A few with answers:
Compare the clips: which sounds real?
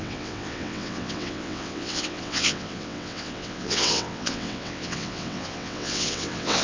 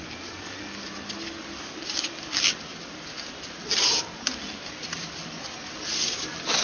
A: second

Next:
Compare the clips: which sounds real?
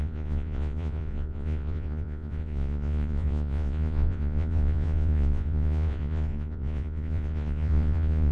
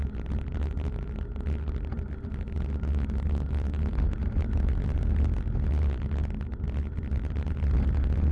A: second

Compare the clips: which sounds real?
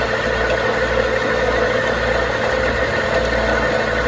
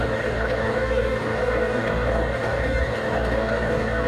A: first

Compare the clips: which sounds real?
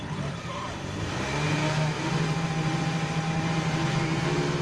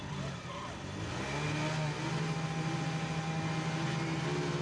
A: second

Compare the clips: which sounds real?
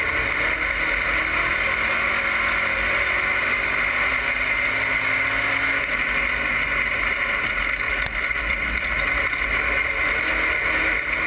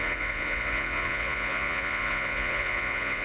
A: first